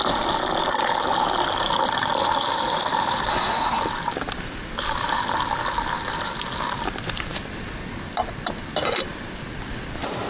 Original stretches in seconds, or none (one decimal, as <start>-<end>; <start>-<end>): 0.0-3.3; 3.8-10.3